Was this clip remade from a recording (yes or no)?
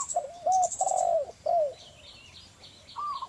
no